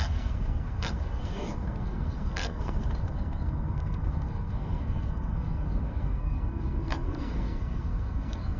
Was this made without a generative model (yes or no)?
no